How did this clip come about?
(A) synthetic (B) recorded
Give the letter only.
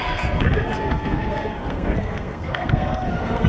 A